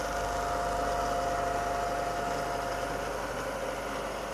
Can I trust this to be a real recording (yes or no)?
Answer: yes